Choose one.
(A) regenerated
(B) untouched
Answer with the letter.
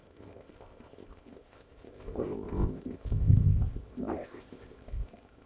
A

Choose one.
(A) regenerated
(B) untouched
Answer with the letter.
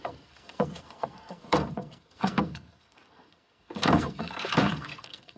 A